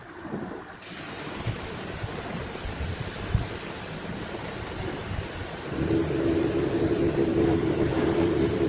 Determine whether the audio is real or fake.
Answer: real